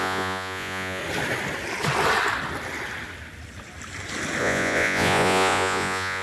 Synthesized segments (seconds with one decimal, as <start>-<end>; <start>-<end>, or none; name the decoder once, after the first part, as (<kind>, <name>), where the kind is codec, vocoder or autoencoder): 0.0-1.0 (vocoder, Vocos); 4.4-6.2